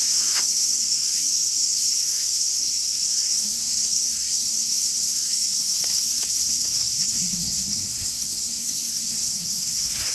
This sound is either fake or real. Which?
fake